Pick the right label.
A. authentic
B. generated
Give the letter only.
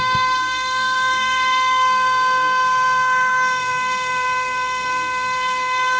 B